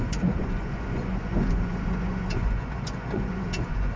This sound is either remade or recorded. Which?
remade